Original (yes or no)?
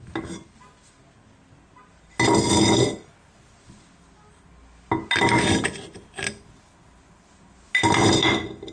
yes